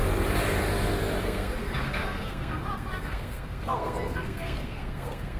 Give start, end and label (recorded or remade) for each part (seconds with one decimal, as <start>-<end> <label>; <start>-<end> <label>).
0.0-1.2 recorded; 1.2-5.4 remade